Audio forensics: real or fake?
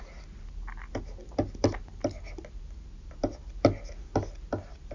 real